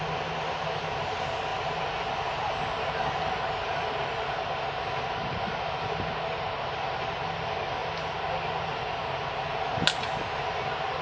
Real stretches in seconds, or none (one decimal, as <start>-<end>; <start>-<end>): 0.0-1.5; 4.2-11.0